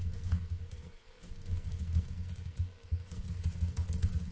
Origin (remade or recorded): remade